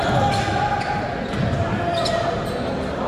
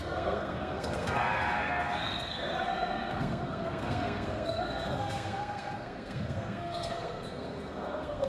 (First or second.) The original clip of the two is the first